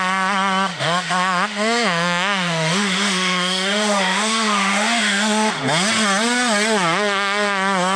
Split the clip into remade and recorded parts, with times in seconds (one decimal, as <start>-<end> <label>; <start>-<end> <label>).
0.0-0.7 recorded; 0.7-5.5 remade; 5.5-8.0 recorded